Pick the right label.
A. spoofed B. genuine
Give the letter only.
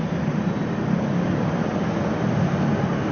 B